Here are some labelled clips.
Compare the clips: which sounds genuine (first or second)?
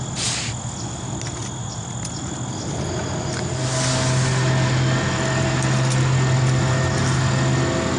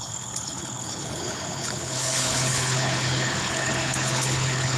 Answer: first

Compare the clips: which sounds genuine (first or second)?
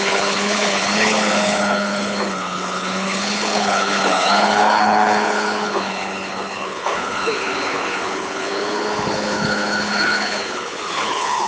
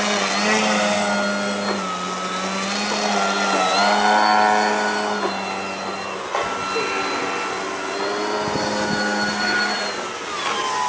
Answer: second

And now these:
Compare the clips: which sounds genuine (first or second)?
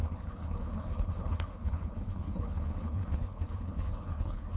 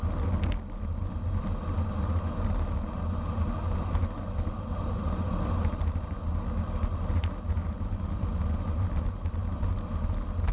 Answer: second